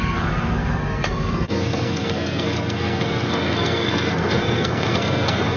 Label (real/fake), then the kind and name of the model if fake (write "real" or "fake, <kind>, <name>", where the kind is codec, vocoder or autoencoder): fake, codec, SNAC